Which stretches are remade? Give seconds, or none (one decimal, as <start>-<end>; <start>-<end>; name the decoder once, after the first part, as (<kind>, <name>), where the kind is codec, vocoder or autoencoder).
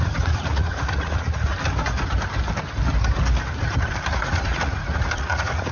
0.0-1.5 (vocoder, Vocos); 4.1-5.7